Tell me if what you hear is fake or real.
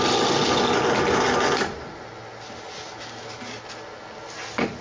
real